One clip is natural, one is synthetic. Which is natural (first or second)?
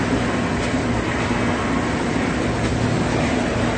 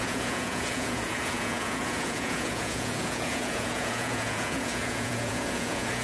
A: first